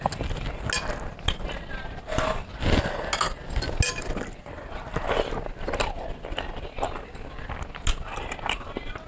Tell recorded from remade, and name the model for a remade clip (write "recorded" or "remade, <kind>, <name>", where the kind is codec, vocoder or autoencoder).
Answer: recorded